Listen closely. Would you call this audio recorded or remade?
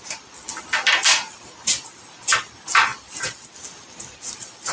recorded